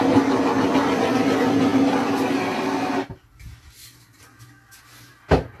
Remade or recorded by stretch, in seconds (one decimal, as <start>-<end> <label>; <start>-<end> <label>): 0.0-5.6 recorded